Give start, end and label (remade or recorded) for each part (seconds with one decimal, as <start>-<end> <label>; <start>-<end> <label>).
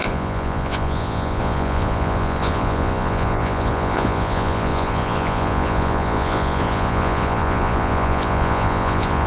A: 0.0-9.3 remade